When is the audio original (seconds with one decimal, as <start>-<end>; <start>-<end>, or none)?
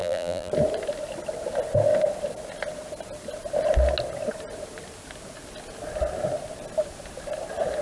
0.5-7.8